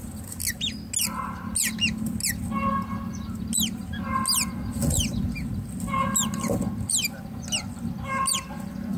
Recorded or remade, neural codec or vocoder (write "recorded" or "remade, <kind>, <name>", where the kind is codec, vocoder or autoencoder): recorded